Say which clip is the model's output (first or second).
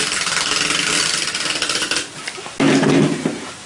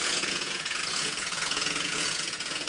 second